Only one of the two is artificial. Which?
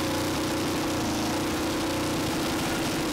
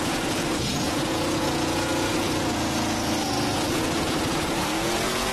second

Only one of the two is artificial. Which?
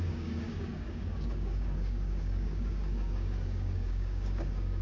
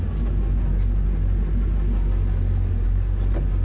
first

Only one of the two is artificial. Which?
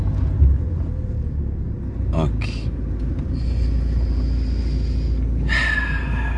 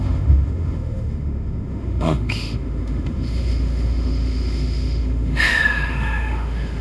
second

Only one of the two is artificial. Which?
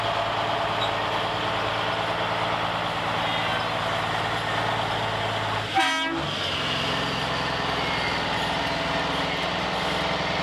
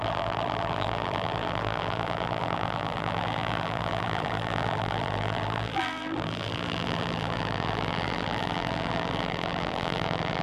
second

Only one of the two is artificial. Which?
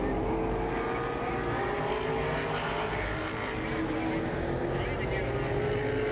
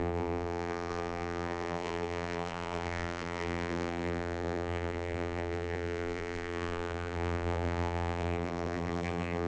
second